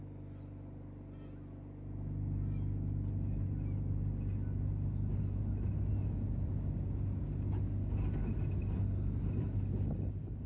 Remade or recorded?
recorded